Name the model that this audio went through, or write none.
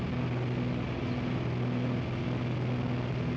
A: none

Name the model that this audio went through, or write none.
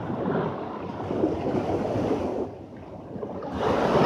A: none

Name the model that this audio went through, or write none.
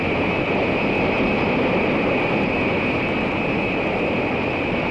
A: none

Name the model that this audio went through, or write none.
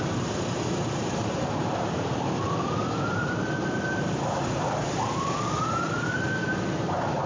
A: vocoder, BigVGAN v2